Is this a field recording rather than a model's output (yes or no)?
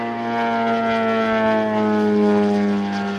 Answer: yes